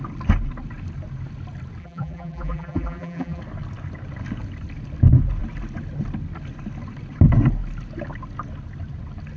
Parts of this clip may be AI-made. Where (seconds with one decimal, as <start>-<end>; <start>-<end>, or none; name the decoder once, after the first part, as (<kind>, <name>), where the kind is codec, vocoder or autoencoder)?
1.8-3.4 (vocoder, BigVGAN v2)